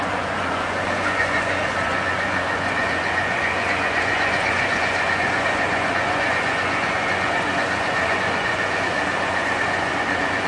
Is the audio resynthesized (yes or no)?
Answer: yes